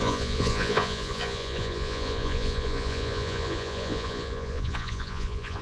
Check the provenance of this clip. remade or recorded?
remade